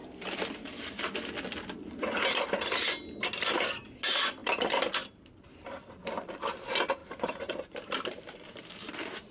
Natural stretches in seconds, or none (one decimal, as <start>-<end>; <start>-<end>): 1.2-7.0; 8.9-9.3